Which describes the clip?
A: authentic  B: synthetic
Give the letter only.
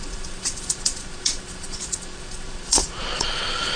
B